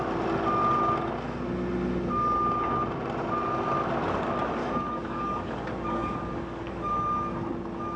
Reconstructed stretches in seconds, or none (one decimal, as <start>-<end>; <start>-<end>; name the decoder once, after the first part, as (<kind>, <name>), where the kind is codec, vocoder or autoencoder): 4.6-6.9 (codec, DAC)